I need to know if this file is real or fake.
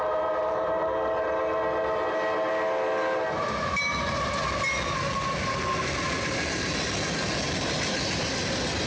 real